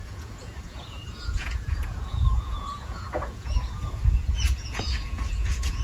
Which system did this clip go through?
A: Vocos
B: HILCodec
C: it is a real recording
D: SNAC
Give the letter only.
A